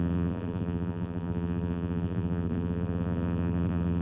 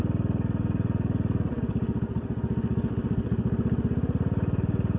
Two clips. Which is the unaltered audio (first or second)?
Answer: second